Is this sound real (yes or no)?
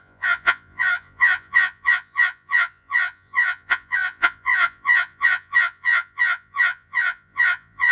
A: no